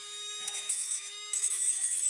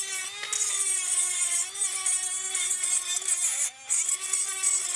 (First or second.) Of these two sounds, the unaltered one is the second